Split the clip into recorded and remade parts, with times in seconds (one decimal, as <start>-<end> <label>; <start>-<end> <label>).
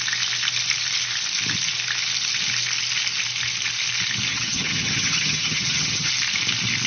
0.0-4.3 recorded; 4.3-6.1 remade; 6.1-6.9 recorded